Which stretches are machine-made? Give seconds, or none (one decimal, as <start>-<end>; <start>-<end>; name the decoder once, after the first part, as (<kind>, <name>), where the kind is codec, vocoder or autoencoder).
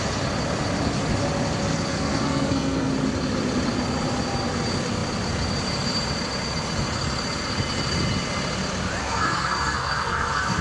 1.9-2.9 (codec, SNAC); 9.0-10.6